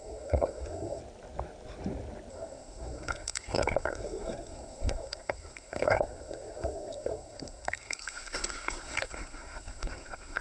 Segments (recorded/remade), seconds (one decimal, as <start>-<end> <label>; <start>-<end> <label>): 0.0-1.0 remade; 1.0-2.3 recorded; 2.3-10.4 remade